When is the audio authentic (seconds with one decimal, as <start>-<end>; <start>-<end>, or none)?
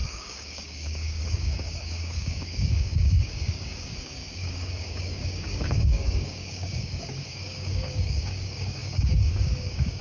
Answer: none